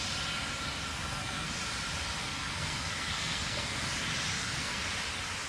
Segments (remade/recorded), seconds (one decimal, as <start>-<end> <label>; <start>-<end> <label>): 0.0-0.9 recorded; 0.9-1.5 remade; 1.5-2.2 recorded; 2.2-3.7 remade; 3.7-4.3 recorded; 4.3-4.8 remade; 4.8-5.5 recorded